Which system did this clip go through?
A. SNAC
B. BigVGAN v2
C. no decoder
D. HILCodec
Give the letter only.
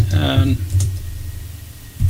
B